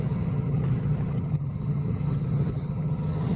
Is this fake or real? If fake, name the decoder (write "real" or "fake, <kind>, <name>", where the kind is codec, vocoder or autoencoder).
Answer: fake, vocoder, HiFi-GAN